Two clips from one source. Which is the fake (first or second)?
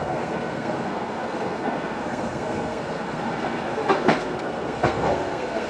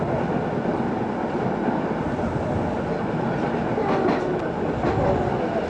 first